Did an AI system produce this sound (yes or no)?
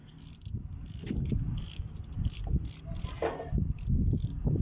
no